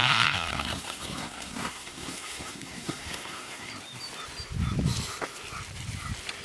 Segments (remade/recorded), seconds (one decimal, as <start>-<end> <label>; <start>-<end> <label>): 0.0-3.7 remade; 3.7-6.4 recorded